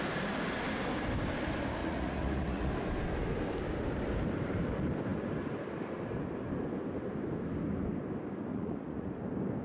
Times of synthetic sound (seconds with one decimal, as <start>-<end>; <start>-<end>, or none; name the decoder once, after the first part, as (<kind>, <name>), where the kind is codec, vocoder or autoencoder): 1.8-2.7 (vocoder, Vocos); 8.5-9.1